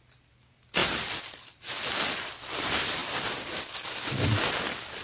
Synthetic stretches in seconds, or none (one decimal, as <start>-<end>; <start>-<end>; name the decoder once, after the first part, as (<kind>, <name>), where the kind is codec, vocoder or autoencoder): 0.8-1.7 (vocoder, BigVGAN v2); 3.0-4.4